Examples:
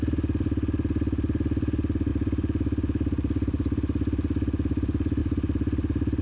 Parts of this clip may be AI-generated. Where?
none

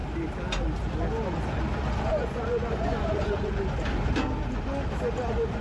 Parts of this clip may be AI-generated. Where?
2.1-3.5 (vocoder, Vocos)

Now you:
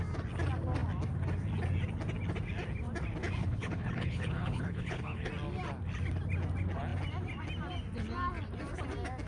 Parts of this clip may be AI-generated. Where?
3.4-5.3 (codec, HILCodec)